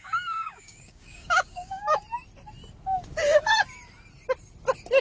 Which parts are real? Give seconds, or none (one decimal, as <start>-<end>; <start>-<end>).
2.0-5.0